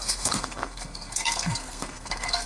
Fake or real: fake